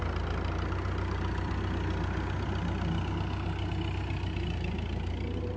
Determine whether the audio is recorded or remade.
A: recorded